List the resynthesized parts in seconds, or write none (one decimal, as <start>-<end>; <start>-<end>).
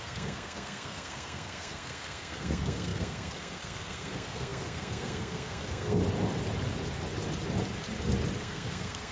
0.0-6.0; 8.4-9.1